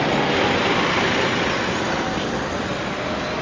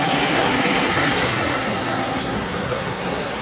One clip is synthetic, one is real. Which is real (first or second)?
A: first